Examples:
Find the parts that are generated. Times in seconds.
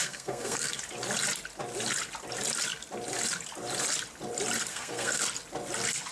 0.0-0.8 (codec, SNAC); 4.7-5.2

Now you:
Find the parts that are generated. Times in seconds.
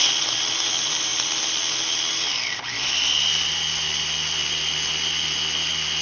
none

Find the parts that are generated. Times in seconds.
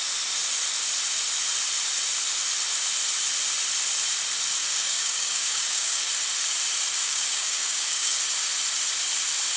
4.6-6.1 (codec, DAC); 7.0-8.2